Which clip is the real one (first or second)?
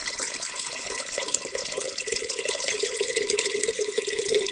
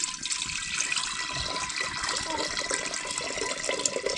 second